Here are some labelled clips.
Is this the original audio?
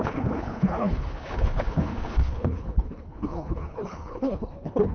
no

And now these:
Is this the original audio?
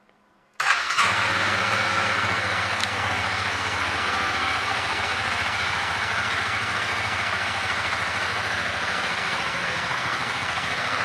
no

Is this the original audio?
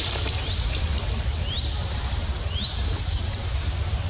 no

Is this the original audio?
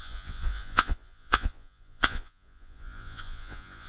no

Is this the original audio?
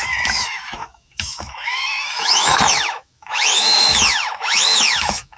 no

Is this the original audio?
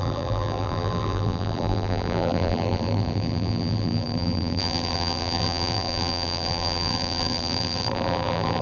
no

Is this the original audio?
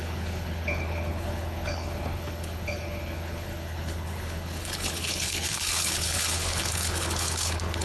no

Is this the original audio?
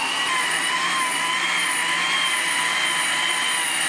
yes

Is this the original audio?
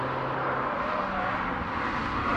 yes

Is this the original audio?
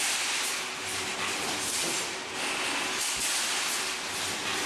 yes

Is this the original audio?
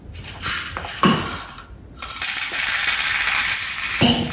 yes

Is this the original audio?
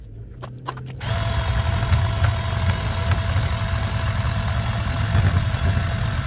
yes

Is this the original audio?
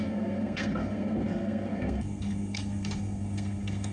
no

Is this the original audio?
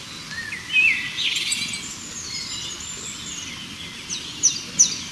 yes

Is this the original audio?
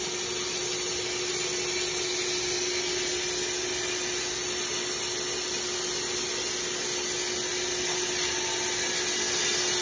yes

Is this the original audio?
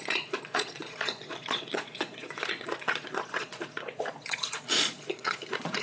no